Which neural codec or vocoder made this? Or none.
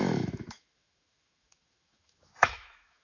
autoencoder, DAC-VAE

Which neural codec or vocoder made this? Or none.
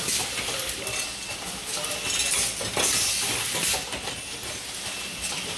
none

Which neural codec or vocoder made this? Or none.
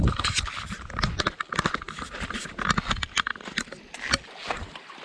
none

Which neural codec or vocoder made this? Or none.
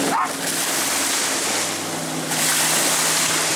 none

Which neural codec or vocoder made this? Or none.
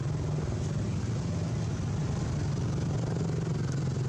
none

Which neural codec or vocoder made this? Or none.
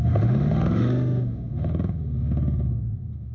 autoencoder, DAC-VAE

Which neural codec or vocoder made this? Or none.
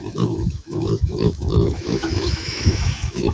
autoencoder, DAC-VAE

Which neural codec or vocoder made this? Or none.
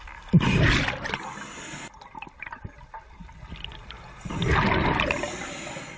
none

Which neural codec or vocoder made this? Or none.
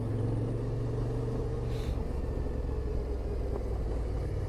none